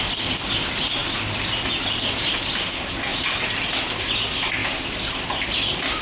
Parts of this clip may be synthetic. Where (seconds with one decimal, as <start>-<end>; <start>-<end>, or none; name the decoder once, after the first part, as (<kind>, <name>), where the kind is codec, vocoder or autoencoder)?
3.1-3.6 (vocoder, BigVGAN v2); 4.6-5.1